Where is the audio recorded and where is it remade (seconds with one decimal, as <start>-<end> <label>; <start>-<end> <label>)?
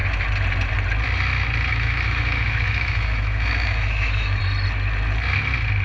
0.0-1.7 recorded; 1.7-4.4 remade; 4.4-5.8 recorded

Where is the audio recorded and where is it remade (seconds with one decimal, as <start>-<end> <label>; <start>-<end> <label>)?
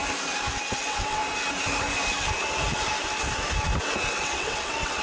0.0-0.7 recorded; 0.7-1.2 remade; 1.2-4.1 recorded; 4.1-5.0 remade